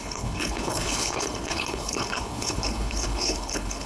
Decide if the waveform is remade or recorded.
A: remade